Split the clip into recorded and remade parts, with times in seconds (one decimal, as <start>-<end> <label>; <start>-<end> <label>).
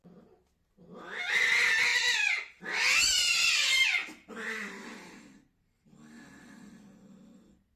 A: 0.0-1.9 recorded; 1.9-2.6 remade; 2.6-7.8 recorded